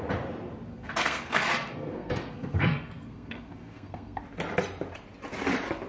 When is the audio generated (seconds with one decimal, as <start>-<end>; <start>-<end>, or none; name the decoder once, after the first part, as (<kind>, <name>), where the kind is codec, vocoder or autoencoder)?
0.7-4.2 (codec, SNAC)